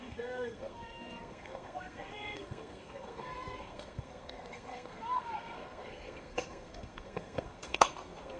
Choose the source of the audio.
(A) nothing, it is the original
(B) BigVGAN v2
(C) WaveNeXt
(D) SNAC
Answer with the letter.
D